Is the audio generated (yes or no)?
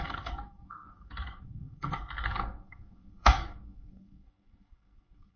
yes